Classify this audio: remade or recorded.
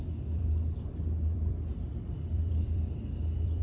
remade